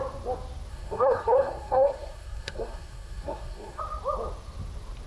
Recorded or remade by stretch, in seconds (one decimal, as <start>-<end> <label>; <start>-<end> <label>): 0.0-0.7 recorded; 0.7-3.8 remade; 3.8-5.1 recorded